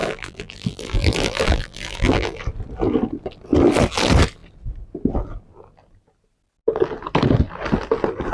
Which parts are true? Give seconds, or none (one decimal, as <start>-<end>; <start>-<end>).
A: 2.4-8.3